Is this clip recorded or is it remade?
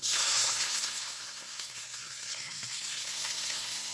remade